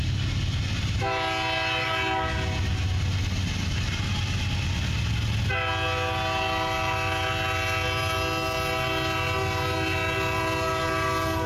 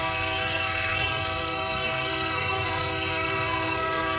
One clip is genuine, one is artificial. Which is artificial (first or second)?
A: second